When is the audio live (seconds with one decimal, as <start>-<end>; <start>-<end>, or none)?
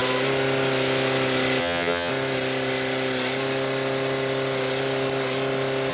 0.0-1.6; 2.1-5.9